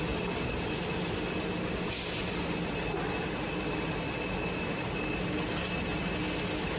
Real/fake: real